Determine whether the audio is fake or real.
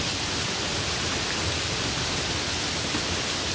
fake